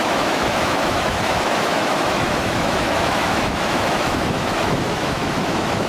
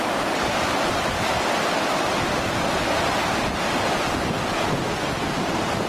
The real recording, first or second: second